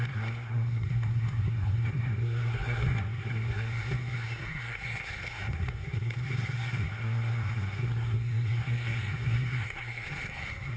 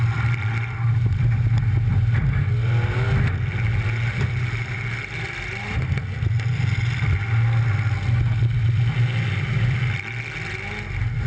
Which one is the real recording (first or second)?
second